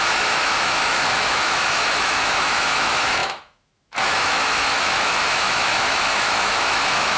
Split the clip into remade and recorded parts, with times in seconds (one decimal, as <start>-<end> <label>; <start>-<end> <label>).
0.0-7.2 remade